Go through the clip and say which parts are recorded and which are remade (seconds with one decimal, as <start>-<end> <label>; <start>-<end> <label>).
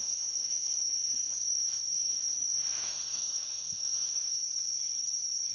0.0-4.4 remade; 4.4-5.5 recorded